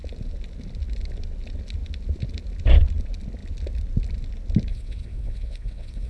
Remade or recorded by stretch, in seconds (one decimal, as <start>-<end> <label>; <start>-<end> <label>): 0.0-4.7 recorded; 4.7-6.1 remade